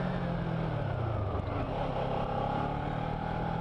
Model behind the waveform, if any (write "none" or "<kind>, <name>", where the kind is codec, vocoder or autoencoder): none